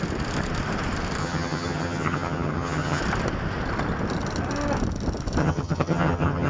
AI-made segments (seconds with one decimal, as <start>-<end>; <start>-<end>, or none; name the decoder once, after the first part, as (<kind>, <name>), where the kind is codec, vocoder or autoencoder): 1.2-3.0 (vocoder, HiFi-GAN); 5.4-6.5